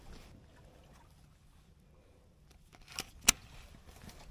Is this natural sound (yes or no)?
yes